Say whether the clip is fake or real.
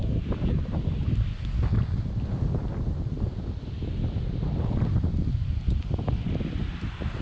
real